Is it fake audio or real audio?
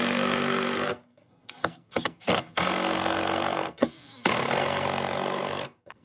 fake